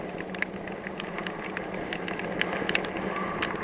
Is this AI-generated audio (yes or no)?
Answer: no